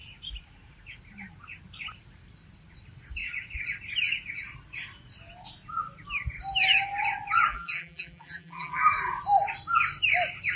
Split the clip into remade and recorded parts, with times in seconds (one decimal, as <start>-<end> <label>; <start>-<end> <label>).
0.0-7.5 recorded; 7.5-8.8 remade; 8.8-10.6 recorded